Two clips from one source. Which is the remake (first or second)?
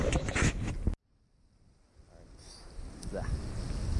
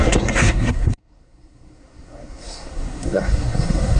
second